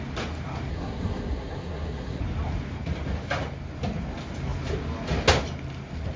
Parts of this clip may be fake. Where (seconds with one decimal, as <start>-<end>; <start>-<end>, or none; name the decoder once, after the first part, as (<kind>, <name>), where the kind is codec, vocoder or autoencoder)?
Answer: 0.7-2.2 (codec, SNAC)